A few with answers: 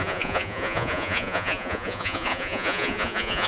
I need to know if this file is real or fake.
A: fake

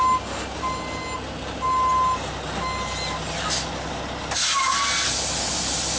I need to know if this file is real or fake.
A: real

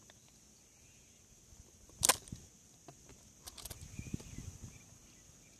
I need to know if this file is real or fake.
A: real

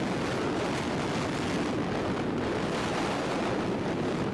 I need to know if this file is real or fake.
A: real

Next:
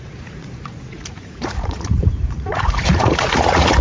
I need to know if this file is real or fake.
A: fake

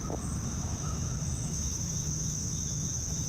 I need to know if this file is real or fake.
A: fake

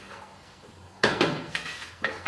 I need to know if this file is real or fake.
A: fake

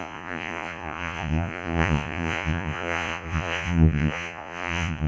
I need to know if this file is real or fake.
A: fake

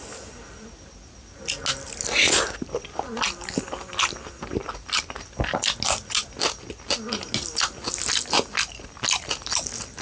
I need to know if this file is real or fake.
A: real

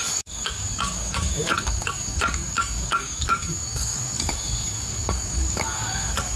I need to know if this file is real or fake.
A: fake